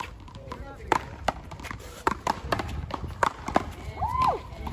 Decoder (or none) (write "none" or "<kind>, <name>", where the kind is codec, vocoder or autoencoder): none